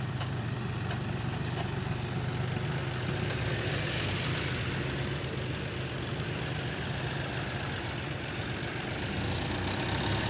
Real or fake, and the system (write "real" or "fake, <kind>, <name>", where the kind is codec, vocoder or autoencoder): real